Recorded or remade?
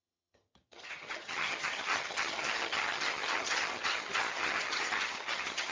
remade